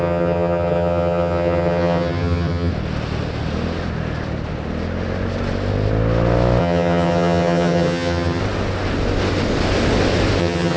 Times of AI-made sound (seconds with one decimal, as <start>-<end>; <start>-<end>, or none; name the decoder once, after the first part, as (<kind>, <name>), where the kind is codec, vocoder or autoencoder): 0.0-2.7 (vocoder, HiFi-GAN); 6.6-8.4; 10.4-10.8